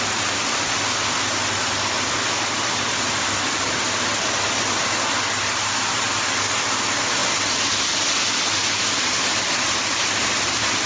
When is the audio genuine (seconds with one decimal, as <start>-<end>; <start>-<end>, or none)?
0.0-10.9